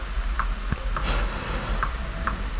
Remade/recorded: recorded